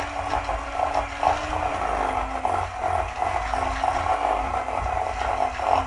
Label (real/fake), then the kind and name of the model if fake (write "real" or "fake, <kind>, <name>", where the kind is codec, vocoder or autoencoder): real